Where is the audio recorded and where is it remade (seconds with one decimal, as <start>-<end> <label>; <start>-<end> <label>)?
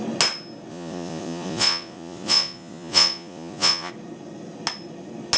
0.0-0.7 recorded; 0.7-3.9 remade; 3.9-5.4 recorded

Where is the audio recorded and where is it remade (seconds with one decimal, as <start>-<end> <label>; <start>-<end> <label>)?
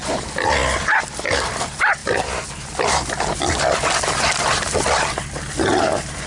0.0-6.3 recorded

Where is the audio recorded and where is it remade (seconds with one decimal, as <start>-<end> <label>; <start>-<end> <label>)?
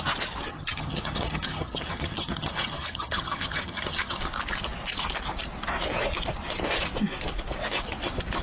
0.0-0.5 recorded; 0.5-4.2 remade; 4.2-8.4 recorded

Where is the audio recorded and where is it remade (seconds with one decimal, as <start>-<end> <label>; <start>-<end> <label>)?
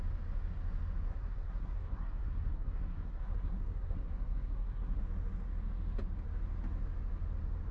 0.0-1.1 recorded; 1.1-5.0 remade; 5.0-7.7 recorded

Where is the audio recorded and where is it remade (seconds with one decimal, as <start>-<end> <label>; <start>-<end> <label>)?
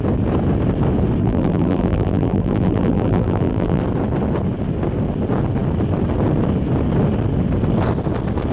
0.0-1.2 recorded; 1.2-3.8 remade; 3.8-8.5 recorded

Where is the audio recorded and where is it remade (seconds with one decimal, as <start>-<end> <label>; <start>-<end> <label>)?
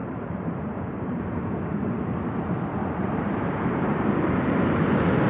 0.0-2.0 remade; 2.0-2.8 recorded; 2.8-4.8 remade; 4.8-5.3 recorded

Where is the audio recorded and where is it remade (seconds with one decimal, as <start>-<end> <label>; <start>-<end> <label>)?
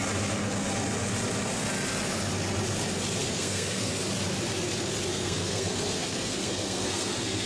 0.0-3.2 recorded; 3.2-3.9 remade; 3.9-5.1 recorded; 5.1-7.5 remade